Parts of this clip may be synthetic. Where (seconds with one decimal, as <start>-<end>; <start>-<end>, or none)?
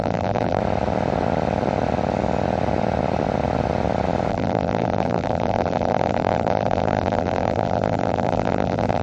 0.0-0.6; 4.3-9.0